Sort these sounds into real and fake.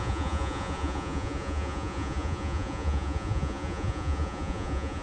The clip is fake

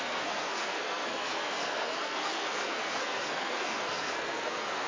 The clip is fake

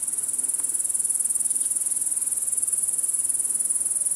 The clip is real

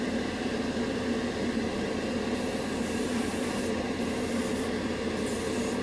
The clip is real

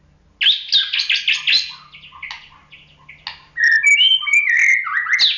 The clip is real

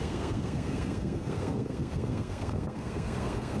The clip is fake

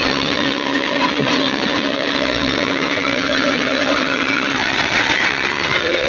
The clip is fake